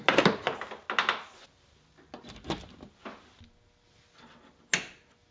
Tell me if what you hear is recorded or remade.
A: recorded